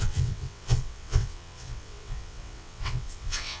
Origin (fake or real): fake